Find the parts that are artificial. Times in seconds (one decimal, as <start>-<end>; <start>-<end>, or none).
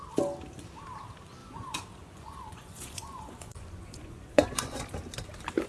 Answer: 1.4-4.8